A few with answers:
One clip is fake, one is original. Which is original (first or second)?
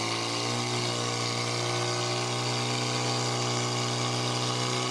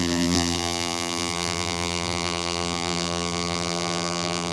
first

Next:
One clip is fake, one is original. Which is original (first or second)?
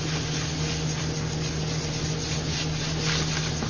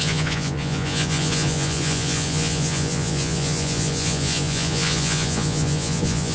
first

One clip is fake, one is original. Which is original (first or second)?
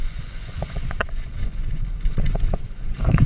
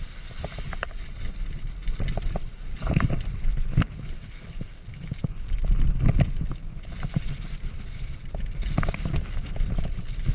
second